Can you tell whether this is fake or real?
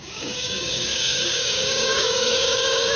fake